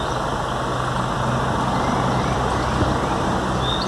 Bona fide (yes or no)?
yes